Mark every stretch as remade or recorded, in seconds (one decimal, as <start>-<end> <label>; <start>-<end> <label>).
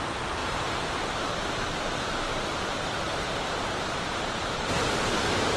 0.0-2.3 recorded; 2.3-5.6 remade